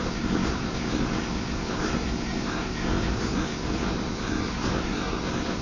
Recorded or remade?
remade